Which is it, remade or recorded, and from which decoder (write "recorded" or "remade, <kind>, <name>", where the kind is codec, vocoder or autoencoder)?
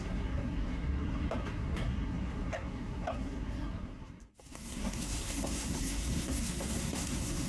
remade, codec, SNAC